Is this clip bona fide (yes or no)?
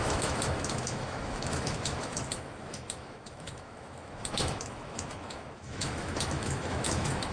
no